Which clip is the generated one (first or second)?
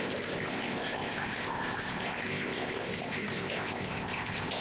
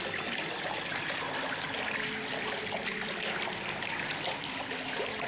first